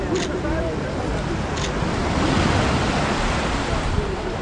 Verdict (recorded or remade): recorded